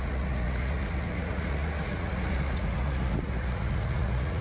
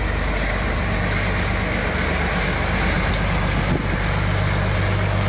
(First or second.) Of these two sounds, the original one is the second